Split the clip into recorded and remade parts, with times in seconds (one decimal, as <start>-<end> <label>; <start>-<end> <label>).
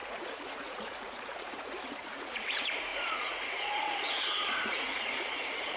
0.0-5.8 remade